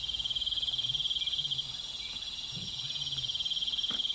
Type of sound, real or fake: real